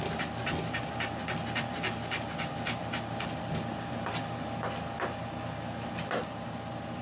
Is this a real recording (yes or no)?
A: yes